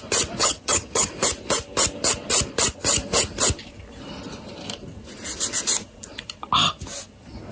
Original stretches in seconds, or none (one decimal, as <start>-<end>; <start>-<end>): 0.0-0.4; 1.1-7.5